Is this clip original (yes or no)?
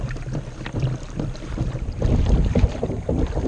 yes